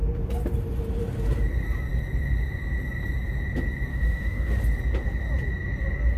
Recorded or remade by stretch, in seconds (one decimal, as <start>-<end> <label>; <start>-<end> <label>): 0.0-3.9 recorded; 3.9-4.6 remade; 4.6-6.2 recorded